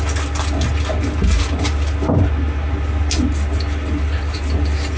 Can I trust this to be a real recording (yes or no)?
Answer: yes